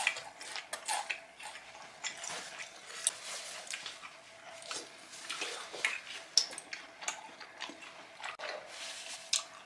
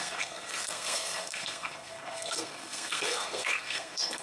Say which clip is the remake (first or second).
second